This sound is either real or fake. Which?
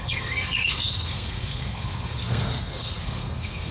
fake